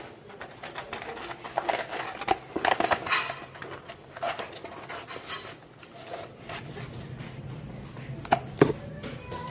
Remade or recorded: recorded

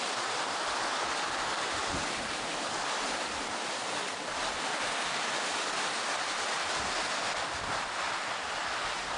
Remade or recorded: recorded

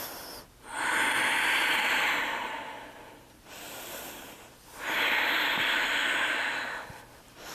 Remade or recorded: recorded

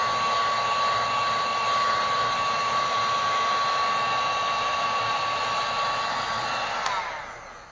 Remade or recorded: recorded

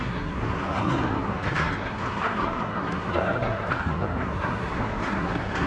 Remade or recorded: remade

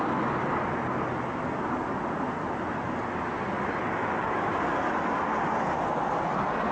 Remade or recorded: recorded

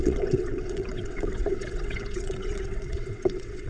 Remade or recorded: remade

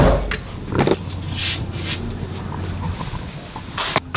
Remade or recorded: recorded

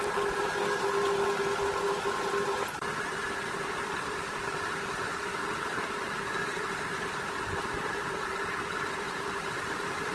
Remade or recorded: recorded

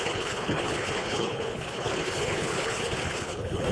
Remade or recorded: remade